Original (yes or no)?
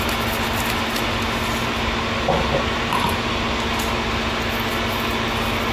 yes